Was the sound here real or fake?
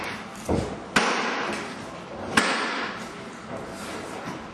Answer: real